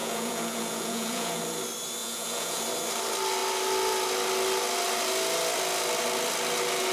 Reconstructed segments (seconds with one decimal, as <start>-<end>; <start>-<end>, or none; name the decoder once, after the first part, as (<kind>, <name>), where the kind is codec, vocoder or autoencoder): 0.0-1.4 (vocoder, Vocos); 2.0-2.6

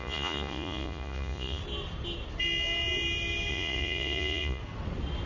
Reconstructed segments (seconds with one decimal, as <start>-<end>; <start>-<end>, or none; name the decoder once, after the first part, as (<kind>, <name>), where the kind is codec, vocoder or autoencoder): 0.0-1.6 (vocoder, Vocos); 3.5-4.6